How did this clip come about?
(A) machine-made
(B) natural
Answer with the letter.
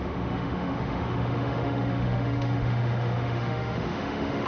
A